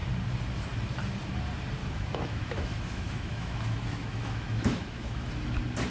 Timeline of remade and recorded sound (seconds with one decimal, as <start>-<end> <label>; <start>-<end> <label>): 0.0-1.8 recorded; 1.8-5.3 remade; 5.3-5.9 recorded